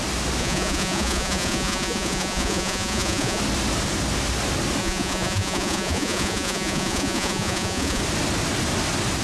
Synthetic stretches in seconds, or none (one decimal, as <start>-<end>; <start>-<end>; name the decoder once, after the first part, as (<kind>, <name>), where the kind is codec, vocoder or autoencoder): 0.4-3.4 (vocoder, Vocos); 4.8-8.0